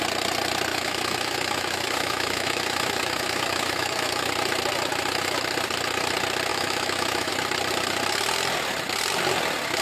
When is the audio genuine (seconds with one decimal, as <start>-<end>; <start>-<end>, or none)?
0.0-0.7; 4.3-6.5; 7.3-9.8